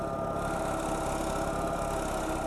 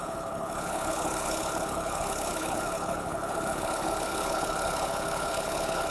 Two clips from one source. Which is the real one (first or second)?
first